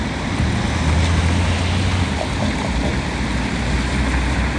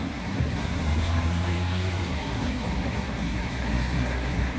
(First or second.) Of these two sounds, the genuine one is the first